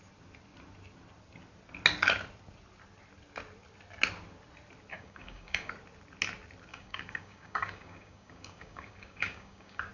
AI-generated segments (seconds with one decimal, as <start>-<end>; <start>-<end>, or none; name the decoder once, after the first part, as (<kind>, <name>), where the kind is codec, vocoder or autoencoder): 4.9-5.7 (codec, DAC); 6.7-9.9